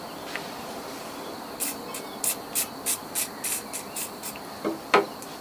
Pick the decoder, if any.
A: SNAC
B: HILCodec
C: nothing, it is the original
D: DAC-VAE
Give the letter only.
C